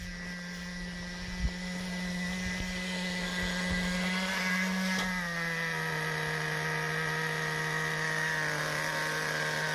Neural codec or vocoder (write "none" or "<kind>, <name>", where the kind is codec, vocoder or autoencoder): none